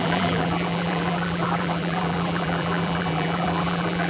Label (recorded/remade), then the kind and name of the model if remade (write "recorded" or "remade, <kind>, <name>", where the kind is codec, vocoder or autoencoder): remade, vocoder, BigVGAN v2